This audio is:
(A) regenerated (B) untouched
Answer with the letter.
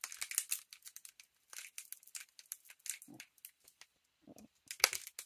B